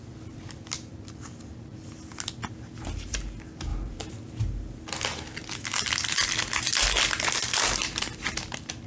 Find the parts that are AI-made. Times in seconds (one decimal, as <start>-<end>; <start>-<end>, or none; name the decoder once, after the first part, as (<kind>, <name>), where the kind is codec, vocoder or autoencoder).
3.7-4.4 (vocoder, BigVGAN v2)

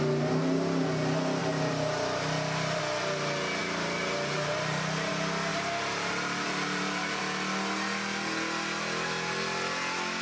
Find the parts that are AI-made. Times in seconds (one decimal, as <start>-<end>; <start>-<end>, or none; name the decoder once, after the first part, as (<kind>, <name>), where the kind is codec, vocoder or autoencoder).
1.4-2.8 (vocoder, BigVGAN v2); 3.6-5.1; 5.5-7.2

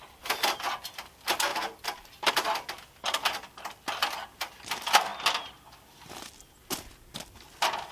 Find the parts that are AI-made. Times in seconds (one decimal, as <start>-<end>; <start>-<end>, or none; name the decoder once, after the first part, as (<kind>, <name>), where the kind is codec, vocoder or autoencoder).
1.5-2.3 (vocoder, BigVGAN v2); 5.1-6.1

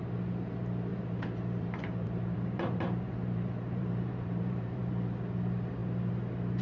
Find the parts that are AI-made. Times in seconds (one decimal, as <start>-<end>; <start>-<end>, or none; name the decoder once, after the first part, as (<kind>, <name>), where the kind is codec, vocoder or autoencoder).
0.9-4.9 (vocoder, BigVGAN v2)